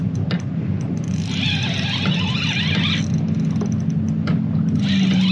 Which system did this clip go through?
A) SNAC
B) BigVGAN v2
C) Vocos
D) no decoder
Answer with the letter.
D